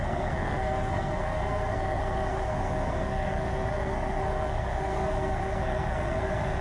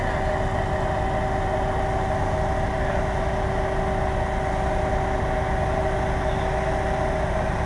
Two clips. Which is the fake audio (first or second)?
first